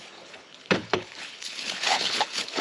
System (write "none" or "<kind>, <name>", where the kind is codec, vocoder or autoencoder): codec, HILCodec